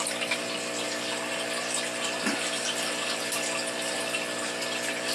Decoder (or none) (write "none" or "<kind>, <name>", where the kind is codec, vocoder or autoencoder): none